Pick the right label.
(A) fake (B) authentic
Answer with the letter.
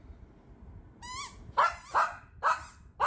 B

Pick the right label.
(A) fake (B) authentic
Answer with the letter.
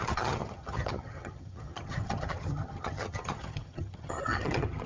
A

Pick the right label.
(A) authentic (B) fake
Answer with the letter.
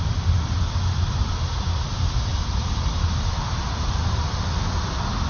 A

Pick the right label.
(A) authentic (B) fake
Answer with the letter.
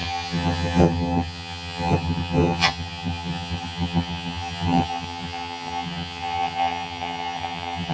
B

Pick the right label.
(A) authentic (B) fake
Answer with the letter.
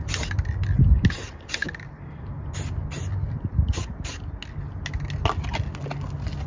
A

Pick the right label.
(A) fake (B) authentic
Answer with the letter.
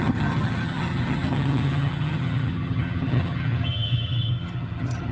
A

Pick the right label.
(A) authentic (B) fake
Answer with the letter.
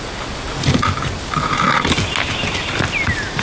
A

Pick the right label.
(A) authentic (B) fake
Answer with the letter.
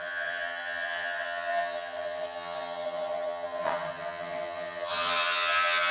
B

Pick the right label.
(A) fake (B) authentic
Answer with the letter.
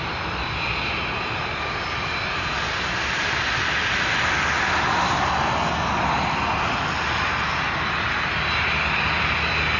B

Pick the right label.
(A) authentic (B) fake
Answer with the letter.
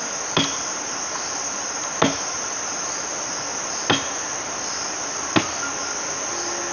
A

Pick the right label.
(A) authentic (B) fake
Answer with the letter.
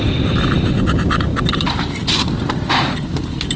A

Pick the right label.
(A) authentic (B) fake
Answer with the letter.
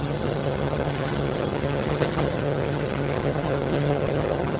B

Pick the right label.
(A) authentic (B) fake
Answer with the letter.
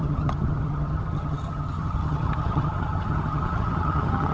B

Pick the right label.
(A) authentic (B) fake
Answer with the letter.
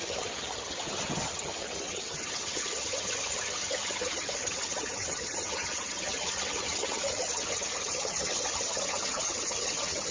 B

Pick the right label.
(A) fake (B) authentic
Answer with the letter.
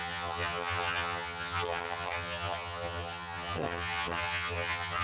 A